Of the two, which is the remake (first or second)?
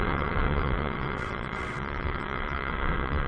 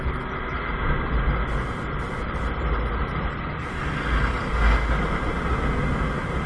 first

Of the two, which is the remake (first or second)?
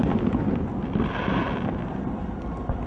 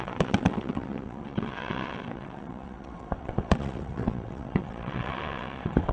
second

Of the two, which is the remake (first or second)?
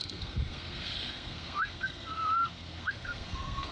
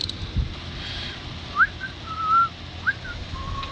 first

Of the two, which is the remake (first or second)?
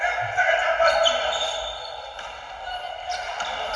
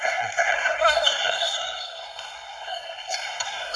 second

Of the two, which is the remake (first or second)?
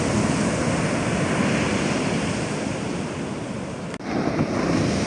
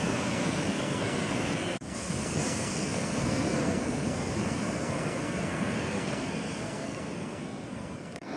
second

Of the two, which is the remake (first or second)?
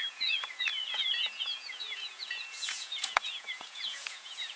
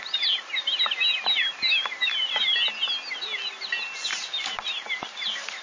first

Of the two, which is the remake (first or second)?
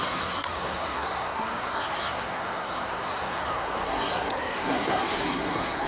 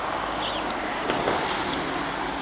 first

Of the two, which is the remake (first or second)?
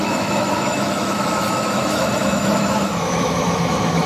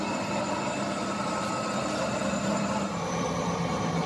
first